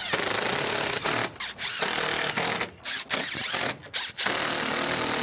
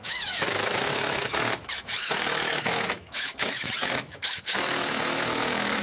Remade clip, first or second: second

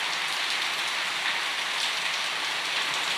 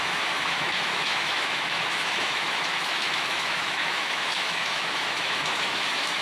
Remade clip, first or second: second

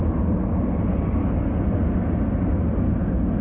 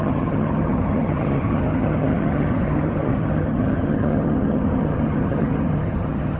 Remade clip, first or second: second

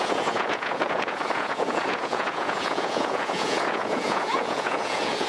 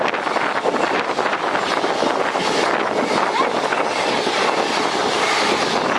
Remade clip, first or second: first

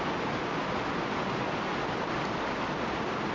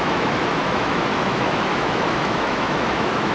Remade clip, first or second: second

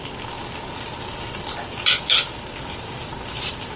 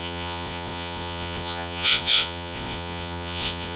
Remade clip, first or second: second